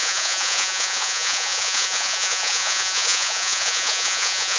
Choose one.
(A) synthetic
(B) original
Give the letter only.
A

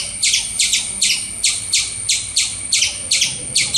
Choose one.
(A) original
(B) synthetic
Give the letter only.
A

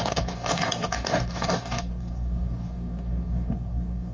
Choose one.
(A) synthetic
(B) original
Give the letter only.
A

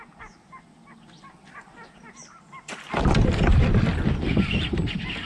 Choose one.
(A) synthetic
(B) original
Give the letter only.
B